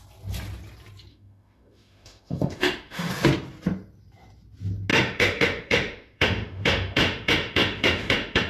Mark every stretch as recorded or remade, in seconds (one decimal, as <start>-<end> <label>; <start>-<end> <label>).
0.0-1.1 recorded; 1.1-3.1 remade; 3.1-4.9 recorded; 4.9-8.5 remade